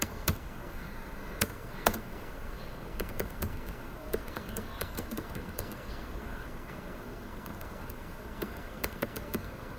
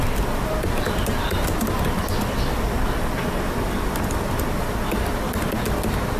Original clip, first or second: second